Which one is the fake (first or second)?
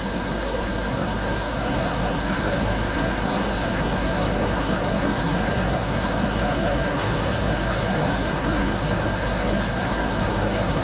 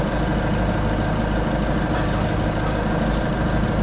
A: first